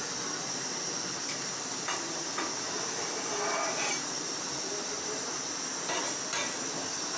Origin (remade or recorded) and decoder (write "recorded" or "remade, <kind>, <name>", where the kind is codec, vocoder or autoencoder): recorded